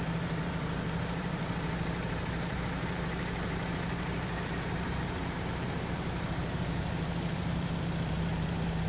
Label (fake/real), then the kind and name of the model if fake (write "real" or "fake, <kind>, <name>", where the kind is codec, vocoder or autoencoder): fake, vocoder, BigVGAN v2